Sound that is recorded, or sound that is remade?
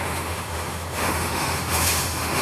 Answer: remade